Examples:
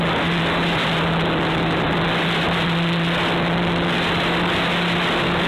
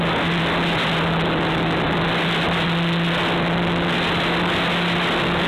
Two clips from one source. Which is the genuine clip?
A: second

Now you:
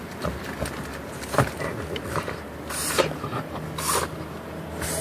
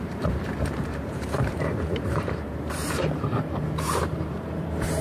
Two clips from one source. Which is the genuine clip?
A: first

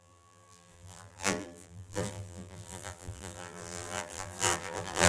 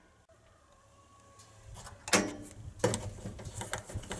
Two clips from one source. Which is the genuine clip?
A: second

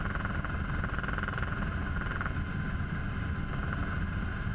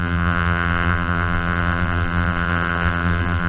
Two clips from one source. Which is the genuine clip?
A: first